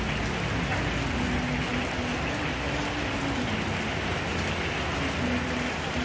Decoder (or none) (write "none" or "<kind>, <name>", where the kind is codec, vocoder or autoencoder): none